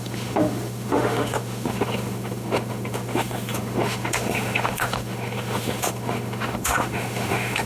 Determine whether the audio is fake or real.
fake